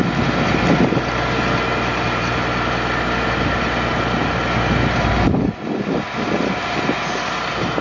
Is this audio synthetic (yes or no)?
no